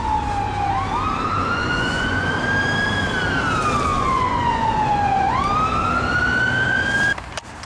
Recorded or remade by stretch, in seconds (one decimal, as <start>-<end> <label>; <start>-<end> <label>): 0.0-1.4 recorded; 1.4-2.3 remade; 2.3-3.9 recorded; 3.9-5.4 remade; 5.4-7.7 recorded